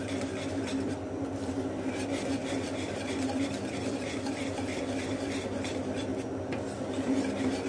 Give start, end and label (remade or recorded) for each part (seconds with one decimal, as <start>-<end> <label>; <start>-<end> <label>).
0.0-2.4 recorded; 2.4-4.8 remade; 4.8-7.7 recorded